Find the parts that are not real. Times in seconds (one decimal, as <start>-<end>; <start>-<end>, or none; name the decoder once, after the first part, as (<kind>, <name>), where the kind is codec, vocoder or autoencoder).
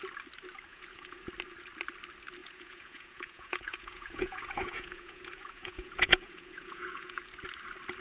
0.7-1.3 (vocoder, Vocos); 2.4-7.2